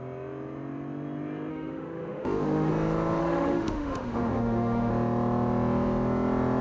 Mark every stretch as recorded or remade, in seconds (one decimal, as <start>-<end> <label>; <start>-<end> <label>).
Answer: 0.0-1.5 recorded; 1.5-2.7 remade; 2.7-3.2 recorded; 3.2-4.9 remade; 4.9-6.6 recorded